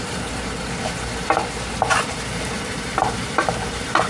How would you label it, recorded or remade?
remade